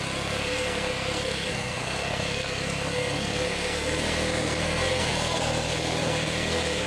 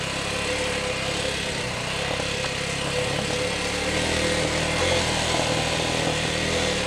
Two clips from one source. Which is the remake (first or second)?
first